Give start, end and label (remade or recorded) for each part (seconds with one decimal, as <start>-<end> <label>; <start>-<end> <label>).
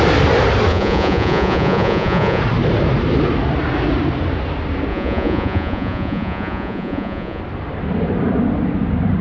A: 0.0-0.7 recorded; 0.7-2.4 remade; 2.4-4.9 recorded; 4.9-7.4 remade; 7.4-9.2 recorded